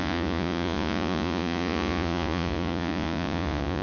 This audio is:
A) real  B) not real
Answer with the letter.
B